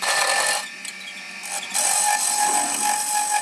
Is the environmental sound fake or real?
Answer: real